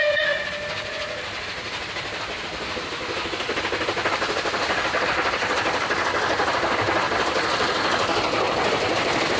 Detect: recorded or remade remade